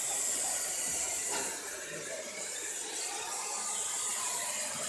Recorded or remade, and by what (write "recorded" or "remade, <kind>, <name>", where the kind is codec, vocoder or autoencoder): remade, vocoder, BigVGAN v2